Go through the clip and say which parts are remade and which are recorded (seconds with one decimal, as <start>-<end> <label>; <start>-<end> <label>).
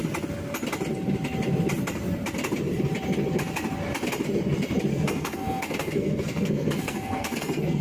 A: 0.0-4.9 recorded; 4.9-7.8 remade